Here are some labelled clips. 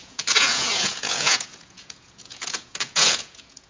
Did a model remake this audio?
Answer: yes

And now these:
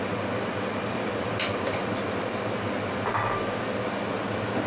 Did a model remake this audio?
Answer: no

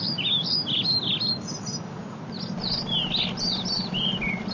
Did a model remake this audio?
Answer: no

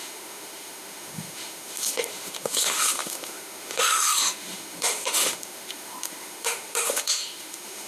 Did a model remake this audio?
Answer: yes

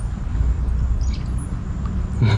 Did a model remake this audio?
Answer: no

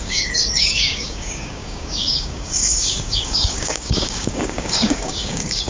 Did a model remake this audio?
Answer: yes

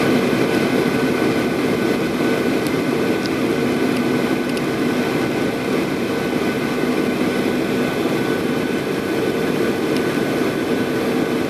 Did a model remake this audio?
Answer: no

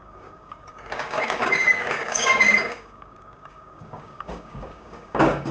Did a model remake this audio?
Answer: yes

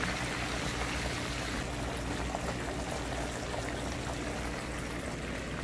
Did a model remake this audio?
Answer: no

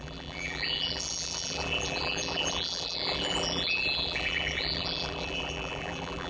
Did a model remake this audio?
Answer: yes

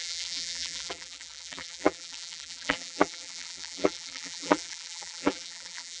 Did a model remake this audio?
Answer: yes